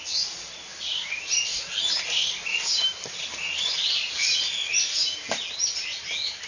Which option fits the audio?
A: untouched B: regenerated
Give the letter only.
A